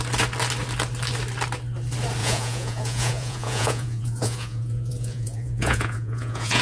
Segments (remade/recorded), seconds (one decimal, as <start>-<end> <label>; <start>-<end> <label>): 0.0-2.2 recorded; 2.2-6.6 remade